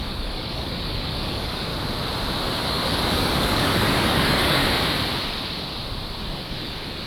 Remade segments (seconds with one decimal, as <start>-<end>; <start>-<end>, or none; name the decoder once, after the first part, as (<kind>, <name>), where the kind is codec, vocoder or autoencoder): 0.0-1.7 (codec, DAC); 2.6-4.6; 6.2-7.1